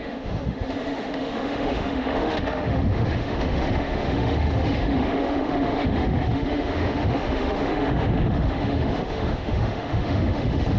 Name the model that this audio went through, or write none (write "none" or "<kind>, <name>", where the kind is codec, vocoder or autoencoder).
autoencoder, DAC-VAE